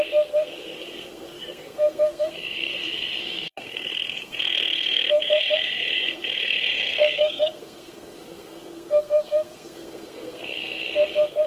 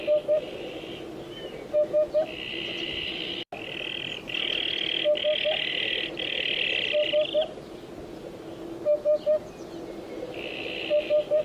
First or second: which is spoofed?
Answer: first